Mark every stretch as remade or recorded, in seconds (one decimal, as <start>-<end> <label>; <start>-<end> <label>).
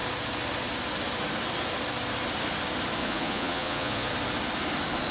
0.0-3.0 recorded; 3.0-4.1 remade; 4.1-5.1 recorded